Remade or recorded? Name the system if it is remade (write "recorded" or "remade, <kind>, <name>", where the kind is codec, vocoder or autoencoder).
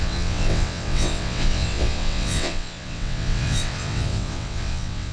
remade, vocoder, WaveNeXt